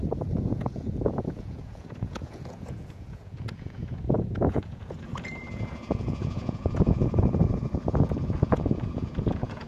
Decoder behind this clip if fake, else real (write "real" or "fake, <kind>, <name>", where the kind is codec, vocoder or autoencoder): fake, vocoder, Vocos